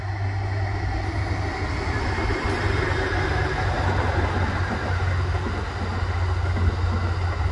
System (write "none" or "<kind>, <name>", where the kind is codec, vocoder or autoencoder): none